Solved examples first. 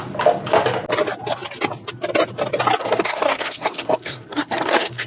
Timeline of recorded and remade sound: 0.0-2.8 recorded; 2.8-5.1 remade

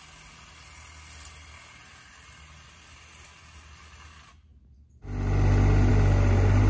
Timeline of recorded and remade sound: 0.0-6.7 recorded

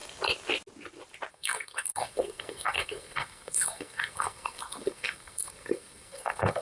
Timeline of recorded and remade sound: 0.0-1.3 recorded; 1.3-6.6 remade

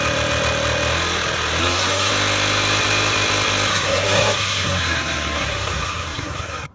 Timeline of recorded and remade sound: 0.0-1.6 recorded; 1.6-2.1 remade; 2.1-3.7 recorded; 3.7-6.7 remade